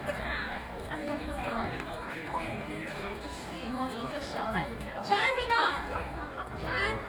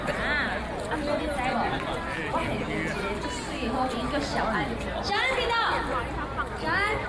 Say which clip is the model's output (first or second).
first